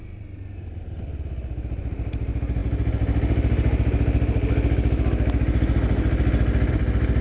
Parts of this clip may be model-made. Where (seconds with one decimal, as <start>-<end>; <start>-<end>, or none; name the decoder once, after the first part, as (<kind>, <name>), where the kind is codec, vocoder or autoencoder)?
none